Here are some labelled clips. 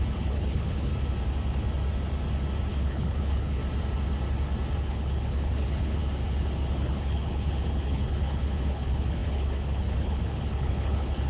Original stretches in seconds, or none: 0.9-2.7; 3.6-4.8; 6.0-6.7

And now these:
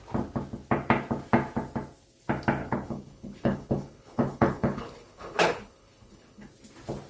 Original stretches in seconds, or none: 0.0-2.6; 6.5-7.1